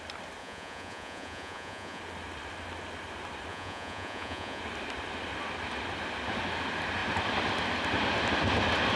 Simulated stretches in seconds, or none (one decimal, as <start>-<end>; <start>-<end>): 0.4-2.0; 3.5-4.6